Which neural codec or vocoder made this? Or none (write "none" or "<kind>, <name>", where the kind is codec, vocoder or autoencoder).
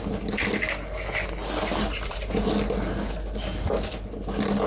none